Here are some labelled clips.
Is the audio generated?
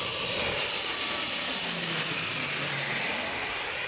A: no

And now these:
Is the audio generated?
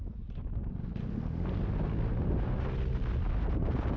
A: no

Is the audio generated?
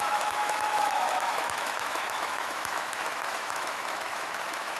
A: yes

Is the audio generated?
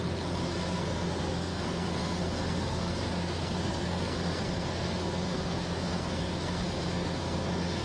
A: yes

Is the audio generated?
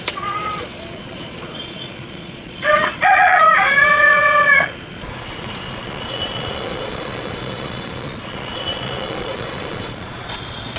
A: yes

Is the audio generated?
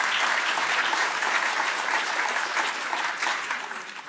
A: yes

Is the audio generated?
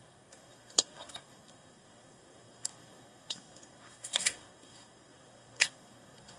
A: yes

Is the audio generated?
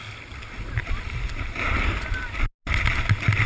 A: no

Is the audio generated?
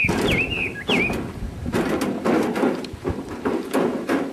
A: no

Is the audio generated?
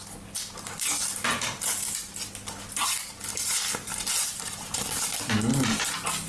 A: no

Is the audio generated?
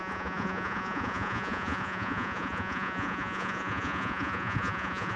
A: yes